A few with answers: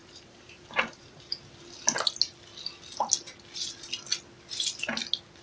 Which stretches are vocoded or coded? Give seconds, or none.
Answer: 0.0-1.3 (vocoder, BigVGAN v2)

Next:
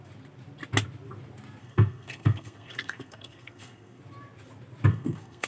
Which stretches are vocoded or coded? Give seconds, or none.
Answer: 1.6-4.0 (codec, SNAC); 4.9-5.5

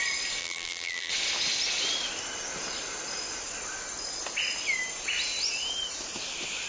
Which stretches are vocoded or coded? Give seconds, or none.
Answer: 0.4-1.1 (vocoder, BigVGAN v2)

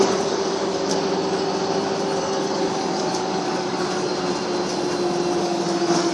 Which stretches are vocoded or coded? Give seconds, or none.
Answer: 0.0-0.9 (codec, DAC); 2.2-4.1; 5.4-6.1

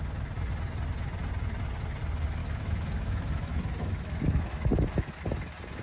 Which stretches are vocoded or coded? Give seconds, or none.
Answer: 2.4-5.2 (autoencoder, DAC-VAE)

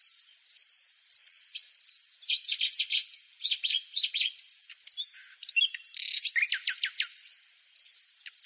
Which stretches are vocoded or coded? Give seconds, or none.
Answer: 1.2-1.7 (vocoder, Vocos)

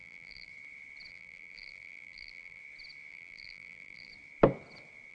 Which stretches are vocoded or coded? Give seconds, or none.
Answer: 0.0-0.5 (vocoder, BigVGAN v2); 1.1-2.6; 3.1-4.1